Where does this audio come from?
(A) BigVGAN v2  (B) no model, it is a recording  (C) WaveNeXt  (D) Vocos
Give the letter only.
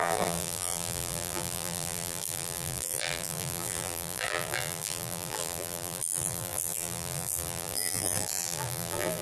A